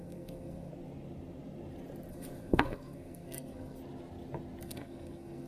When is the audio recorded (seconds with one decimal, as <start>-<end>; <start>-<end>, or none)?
0.7-2.1; 3.8-4.6